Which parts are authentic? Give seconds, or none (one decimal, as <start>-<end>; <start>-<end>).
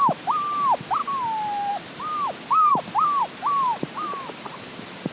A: 0.0-2.7; 4.6-5.1